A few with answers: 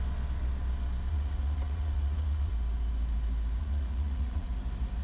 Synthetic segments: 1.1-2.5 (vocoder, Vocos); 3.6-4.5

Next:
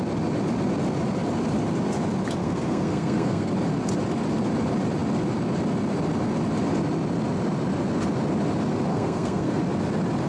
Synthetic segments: 2.4-3.5 (codec, SNAC); 8.9-9.6

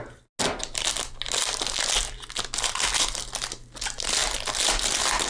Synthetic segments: none